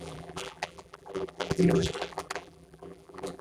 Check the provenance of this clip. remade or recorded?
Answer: remade